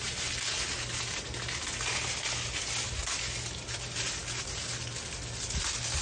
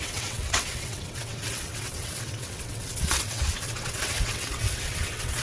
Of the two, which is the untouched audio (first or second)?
first